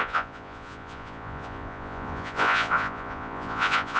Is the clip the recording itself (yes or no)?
no